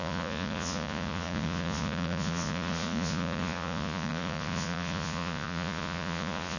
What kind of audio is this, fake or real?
fake